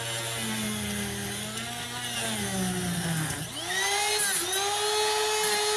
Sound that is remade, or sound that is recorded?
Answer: recorded